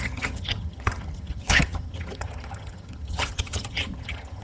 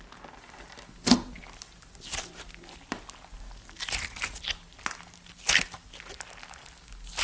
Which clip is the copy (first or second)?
first